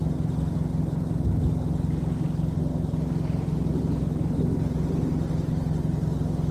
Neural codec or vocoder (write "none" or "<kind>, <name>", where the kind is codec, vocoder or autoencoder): none